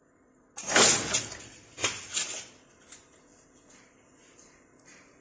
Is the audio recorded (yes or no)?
yes